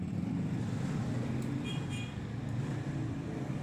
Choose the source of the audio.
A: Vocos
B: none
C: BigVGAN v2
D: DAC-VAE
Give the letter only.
B